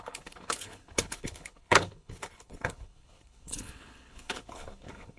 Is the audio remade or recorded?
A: remade